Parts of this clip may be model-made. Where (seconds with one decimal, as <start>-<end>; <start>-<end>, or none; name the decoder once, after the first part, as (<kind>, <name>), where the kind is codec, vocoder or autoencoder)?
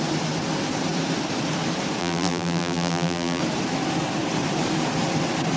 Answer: 2.0-3.4 (vocoder, BigVGAN v2)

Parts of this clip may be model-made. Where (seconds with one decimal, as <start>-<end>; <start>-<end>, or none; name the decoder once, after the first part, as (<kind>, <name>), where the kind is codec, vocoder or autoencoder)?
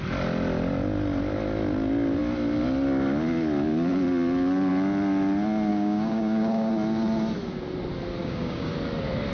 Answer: 5.7-6.7 (codec, DAC); 8.2-8.7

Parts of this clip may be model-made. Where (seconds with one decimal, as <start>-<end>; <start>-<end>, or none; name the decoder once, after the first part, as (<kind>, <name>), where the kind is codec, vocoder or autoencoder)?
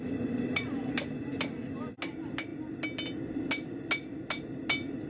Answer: none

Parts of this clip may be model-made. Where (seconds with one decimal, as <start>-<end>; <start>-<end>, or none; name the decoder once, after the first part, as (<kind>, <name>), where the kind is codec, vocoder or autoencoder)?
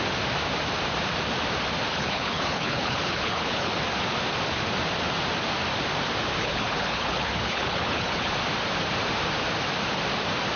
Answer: 1.9-3.7 (codec, HILCodec); 6.4-8.3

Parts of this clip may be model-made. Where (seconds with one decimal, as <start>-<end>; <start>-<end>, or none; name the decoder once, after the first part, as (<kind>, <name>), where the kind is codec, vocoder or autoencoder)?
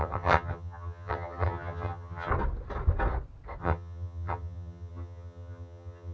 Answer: 0.0-2.3 (vocoder, HiFi-GAN); 3.6-6.1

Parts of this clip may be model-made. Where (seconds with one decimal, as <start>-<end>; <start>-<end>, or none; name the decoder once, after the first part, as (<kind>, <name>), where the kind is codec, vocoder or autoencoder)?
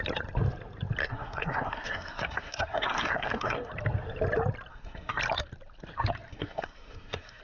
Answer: 1.0-3.7 (codec, SNAC); 4.7-5.2; 6.3-7.4